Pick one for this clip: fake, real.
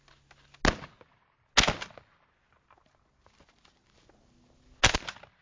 real